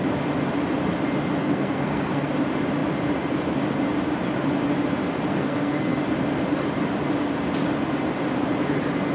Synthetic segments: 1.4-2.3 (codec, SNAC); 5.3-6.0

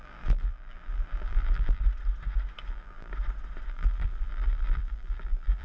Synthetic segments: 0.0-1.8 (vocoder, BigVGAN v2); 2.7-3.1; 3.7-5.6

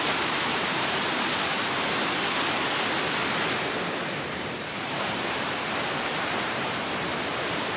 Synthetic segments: 0.5-1.2 (vocoder, BigVGAN v2); 4.1-6.8